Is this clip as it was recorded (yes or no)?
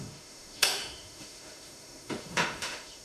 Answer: no